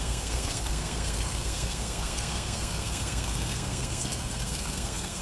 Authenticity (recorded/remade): remade